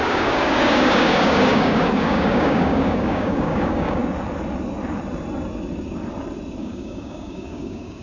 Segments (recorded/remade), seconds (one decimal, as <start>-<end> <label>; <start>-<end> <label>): 0.0-4.0 remade; 4.0-6.6 recorded; 6.6-8.0 remade